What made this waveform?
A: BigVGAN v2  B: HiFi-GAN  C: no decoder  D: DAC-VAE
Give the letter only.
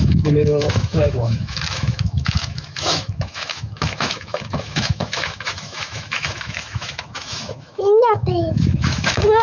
D